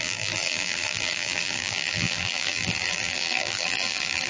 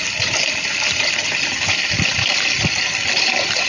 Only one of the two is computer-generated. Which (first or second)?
first